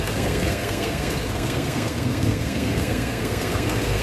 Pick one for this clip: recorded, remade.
remade